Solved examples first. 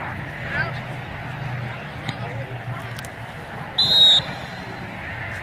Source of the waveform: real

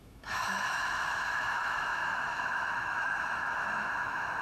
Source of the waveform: fake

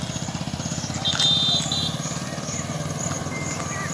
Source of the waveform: real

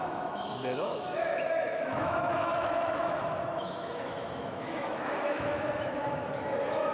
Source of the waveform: fake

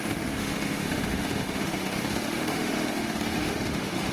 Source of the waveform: fake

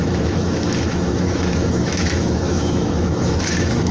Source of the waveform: fake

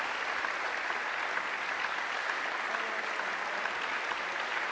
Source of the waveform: real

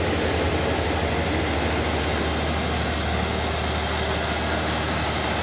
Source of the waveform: real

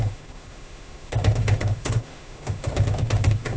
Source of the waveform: fake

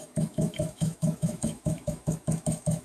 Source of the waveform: fake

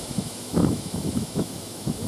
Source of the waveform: fake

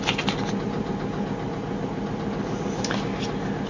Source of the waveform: real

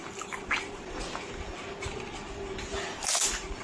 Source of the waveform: real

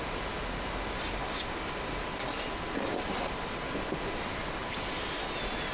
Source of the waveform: real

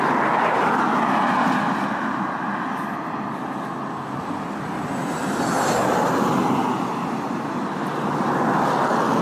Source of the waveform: real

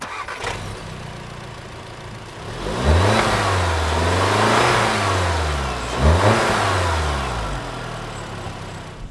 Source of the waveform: real